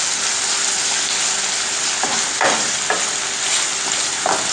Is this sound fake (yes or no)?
no